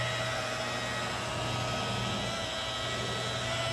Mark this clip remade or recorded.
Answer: recorded